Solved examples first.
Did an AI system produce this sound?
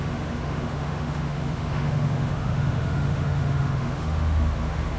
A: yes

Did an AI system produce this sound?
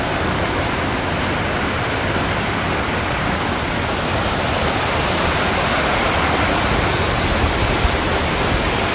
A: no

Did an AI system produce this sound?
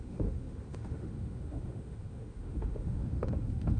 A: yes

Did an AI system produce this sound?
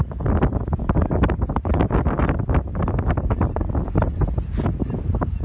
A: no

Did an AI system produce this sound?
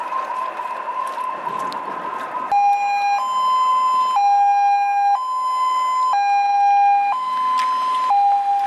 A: no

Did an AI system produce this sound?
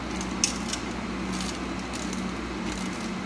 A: no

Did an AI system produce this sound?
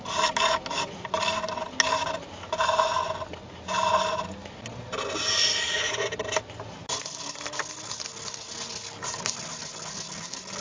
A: no